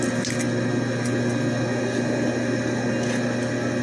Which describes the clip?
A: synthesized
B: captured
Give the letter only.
B